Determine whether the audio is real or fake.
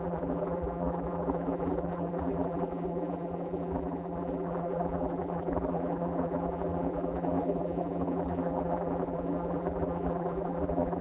fake